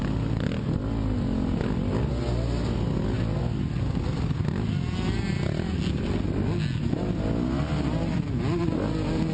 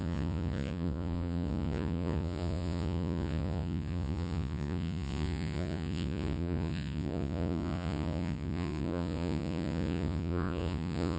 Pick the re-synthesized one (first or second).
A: second